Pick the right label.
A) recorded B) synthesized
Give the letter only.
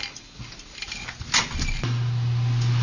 A